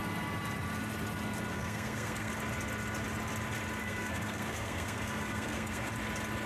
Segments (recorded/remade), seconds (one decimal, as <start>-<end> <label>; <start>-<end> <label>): 0.0-1.5 recorded; 1.5-2.3 remade; 2.3-3.8 recorded; 3.8-5.9 remade; 5.9-6.5 recorded